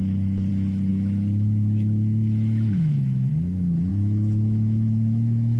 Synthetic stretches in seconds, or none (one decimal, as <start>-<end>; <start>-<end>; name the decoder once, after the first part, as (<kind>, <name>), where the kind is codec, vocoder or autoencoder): 0.0-0.5 (autoencoder, DAC-VAE); 0.9-3.3; 3.9-5.6